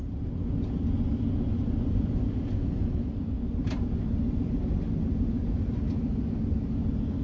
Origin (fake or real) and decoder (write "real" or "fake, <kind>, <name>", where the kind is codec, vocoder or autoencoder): real